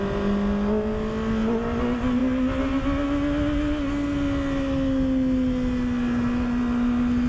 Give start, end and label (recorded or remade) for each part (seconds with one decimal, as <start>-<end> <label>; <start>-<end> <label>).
0.0-7.3 recorded